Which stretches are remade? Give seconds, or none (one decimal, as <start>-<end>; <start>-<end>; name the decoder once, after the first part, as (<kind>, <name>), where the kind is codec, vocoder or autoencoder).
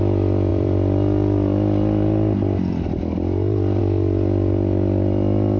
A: 0.0-5.6 (vocoder, BigVGAN v2)